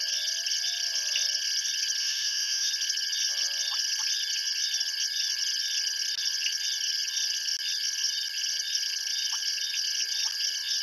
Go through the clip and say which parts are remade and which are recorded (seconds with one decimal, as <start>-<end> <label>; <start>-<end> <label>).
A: 0.0-2.0 recorded; 2.0-2.7 remade; 2.7-10.8 recorded